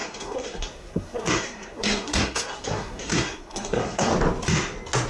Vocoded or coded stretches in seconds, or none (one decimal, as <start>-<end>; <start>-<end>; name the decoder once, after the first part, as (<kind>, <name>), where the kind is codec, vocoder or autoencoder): 0.0-4.1 (codec, SNAC)